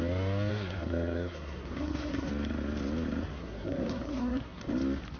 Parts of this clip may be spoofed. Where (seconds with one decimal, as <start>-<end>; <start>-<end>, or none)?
0.5-2.3; 3.3-4.7